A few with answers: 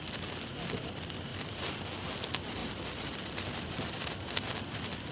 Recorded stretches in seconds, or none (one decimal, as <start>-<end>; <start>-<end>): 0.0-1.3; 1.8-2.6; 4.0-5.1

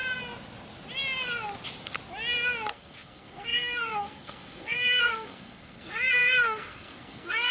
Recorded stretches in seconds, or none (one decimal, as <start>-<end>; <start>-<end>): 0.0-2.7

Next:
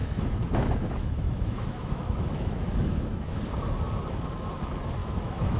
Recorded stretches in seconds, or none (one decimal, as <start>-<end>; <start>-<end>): 3.4-5.0